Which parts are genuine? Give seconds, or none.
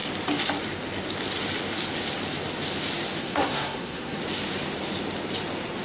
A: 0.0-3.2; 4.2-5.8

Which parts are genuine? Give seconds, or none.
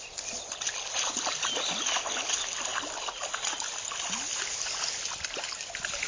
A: 0.0-6.1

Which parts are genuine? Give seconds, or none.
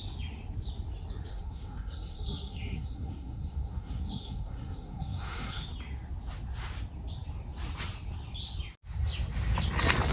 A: 0.0-1.3; 5.6-10.1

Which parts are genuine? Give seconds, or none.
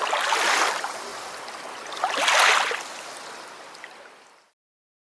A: 0.0-5.1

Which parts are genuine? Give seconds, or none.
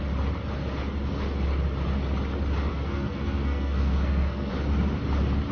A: 0.0-2.7; 4.5-5.5